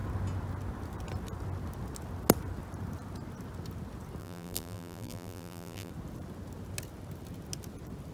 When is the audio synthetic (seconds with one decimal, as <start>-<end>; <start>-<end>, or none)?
4.2-5.9